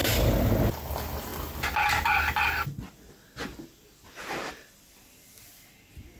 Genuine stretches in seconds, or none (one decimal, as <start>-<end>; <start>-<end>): 0.9-6.2